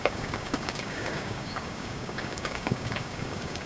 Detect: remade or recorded remade